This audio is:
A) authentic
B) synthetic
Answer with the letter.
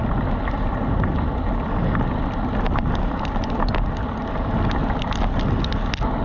A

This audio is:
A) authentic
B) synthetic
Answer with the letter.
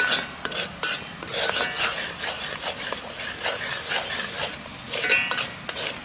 A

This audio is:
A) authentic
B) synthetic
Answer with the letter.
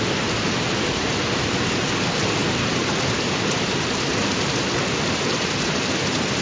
A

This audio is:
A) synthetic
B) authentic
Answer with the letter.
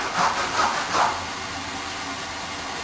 B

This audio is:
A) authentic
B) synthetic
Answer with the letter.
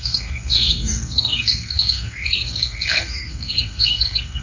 B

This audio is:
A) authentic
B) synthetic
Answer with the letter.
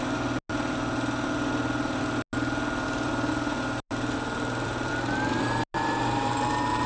A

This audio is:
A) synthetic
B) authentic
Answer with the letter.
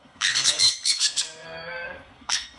A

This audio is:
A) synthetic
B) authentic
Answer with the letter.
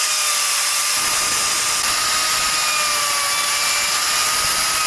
B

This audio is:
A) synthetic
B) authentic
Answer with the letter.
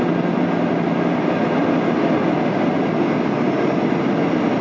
B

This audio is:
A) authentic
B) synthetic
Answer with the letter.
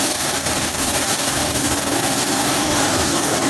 B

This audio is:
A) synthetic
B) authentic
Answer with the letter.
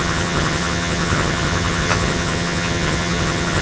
A